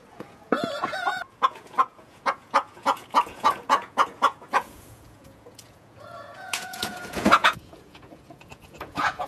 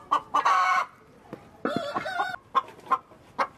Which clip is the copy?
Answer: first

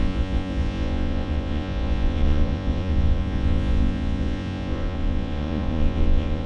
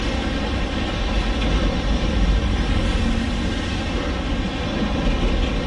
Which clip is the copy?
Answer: first